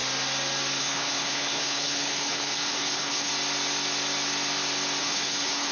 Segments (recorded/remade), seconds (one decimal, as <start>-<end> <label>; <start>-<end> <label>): 0.0-0.8 recorded; 0.8-3.3 remade; 3.3-5.0 recorded; 5.0-5.7 remade